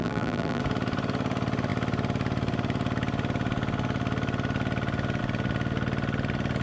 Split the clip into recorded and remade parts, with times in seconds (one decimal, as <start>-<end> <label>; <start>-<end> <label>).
0.0-0.6 remade; 0.6-6.6 recorded